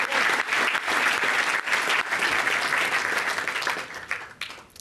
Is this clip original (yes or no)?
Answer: yes